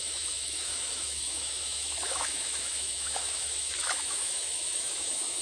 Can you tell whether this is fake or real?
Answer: fake